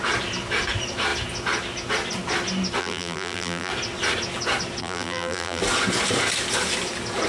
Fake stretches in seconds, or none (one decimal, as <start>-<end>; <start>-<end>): 2.8-3.7; 4.8-5.6